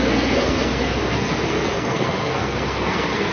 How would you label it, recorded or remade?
remade